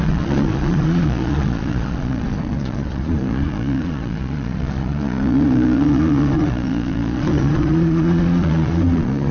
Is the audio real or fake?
fake